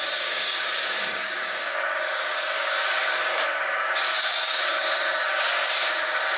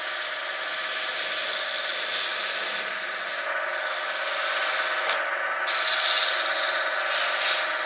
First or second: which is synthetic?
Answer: first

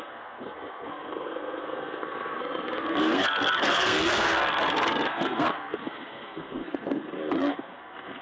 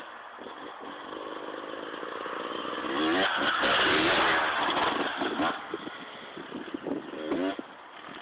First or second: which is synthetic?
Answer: first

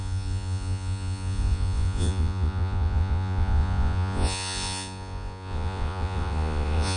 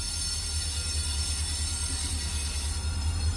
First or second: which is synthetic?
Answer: first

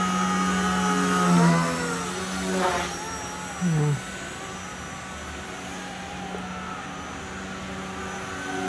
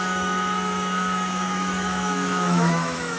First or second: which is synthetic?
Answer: second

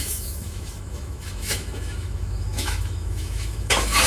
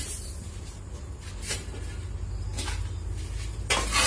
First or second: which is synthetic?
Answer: first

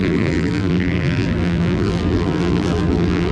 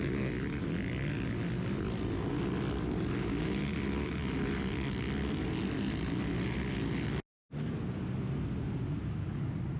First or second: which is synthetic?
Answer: first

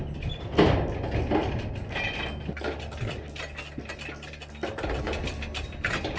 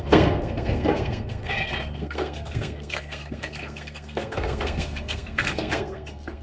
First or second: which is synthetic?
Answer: second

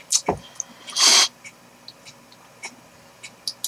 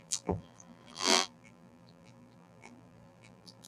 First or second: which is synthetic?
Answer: second